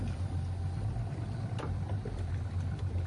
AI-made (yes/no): yes